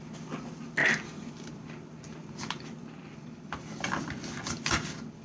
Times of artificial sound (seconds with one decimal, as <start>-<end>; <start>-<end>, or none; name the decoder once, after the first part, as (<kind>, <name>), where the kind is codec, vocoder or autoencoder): none